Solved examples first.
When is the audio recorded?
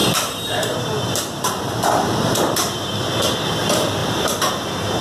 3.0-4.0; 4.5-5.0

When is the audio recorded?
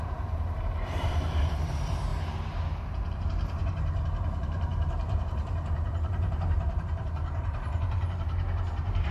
2.1-3.1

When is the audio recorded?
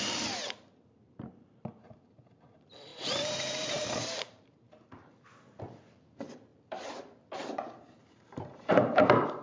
6.5-8.1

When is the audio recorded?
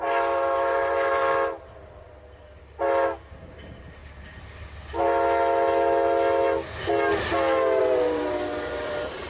1.2-3.5; 4.0-7.8